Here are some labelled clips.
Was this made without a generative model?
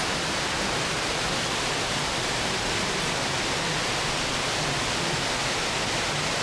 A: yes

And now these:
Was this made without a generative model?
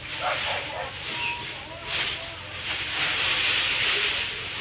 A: yes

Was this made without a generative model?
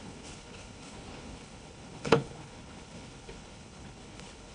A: no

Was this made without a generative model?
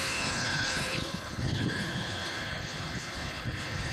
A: no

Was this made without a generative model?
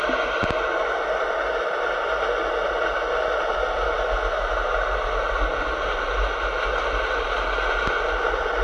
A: yes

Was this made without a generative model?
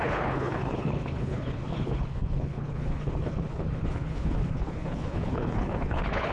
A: no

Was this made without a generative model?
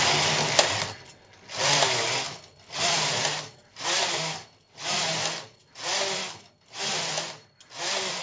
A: yes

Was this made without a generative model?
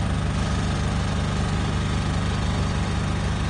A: yes